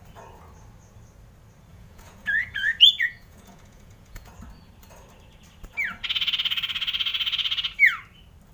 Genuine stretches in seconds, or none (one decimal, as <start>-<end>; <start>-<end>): 0.0-1.7; 4.3-8.5